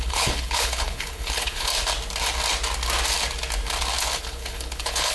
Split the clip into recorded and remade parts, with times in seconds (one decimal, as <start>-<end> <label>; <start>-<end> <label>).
0.0-1.7 remade; 1.7-4.2 recorded; 4.2-5.1 remade

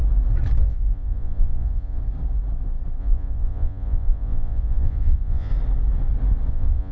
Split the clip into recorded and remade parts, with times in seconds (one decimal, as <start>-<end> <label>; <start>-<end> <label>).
0.0-0.6 recorded; 0.6-2.0 remade; 2.0-3.0 recorded; 3.0-5.5 remade; 5.5-6.5 recorded; 6.5-6.9 remade

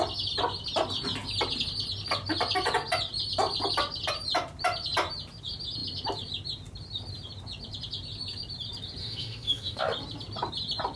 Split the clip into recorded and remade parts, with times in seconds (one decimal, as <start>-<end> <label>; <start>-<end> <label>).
0.0-9.0 recorded; 9.0-9.8 remade; 9.8-11.0 recorded

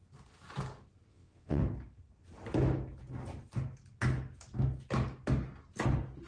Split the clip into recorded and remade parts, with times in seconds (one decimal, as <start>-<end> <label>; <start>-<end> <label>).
0.0-1.1 recorded; 1.1-1.6 remade; 1.6-6.3 recorded

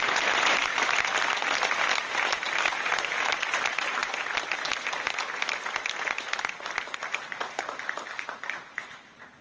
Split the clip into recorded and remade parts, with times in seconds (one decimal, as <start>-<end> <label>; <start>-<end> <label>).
0.0-0.7 remade; 0.7-2.7 recorded; 2.7-4.0 remade; 4.0-7.3 recorded; 7.3-9.4 remade

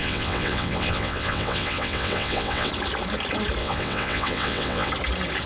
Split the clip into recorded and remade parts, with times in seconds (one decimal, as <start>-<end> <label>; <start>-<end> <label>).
0.0-2.7 remade; 2.7-3.6 recorded; 3.6-4.9 remade; 4.9-5.5 recorded

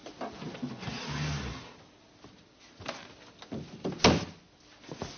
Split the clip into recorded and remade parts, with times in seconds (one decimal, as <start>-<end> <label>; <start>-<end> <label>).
0.0-5.2 recorded